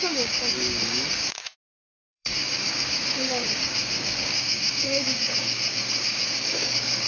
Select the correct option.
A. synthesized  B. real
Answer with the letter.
A